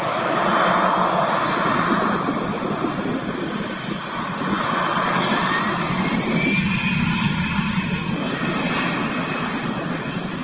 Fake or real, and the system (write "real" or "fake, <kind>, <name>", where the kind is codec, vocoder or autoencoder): real